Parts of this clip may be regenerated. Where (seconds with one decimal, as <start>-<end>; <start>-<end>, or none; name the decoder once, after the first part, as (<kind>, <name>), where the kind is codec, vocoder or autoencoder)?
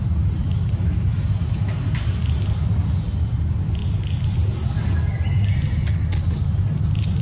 none